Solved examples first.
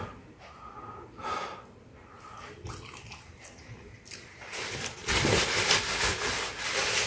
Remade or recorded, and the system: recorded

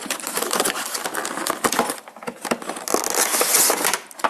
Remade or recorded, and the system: recorded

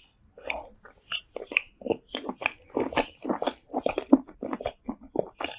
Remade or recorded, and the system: recorded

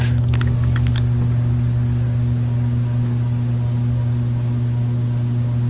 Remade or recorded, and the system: recorded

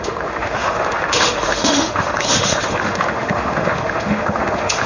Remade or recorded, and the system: remade, autoencoder, DAC-VAE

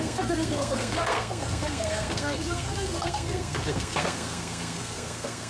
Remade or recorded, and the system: remade, codec, SNAC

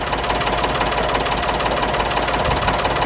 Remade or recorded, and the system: recorded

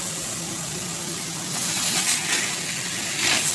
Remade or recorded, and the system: recorded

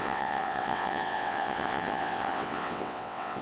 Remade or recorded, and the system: remade, vocoder, WaveNeXt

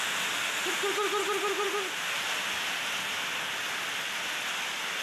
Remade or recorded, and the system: recorded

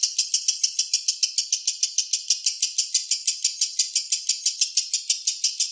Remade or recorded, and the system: recorded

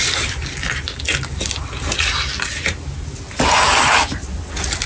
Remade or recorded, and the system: recorded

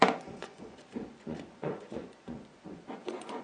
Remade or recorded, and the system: remade, vocoder, Vocos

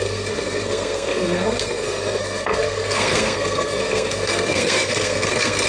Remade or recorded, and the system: remade, codec, SNAC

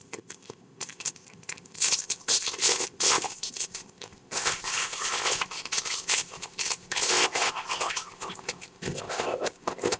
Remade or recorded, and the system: remade, codec, ZipCodec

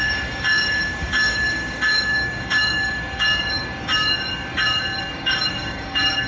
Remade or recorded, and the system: remade, codec, DAC